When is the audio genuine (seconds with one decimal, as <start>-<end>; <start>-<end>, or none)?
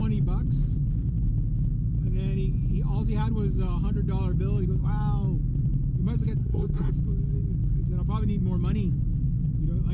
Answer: 0.0-6.4; 6.9-9.9